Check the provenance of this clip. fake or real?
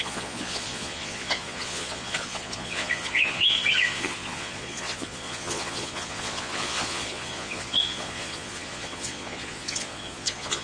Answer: fake